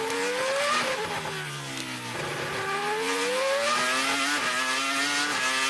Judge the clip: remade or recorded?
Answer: recorded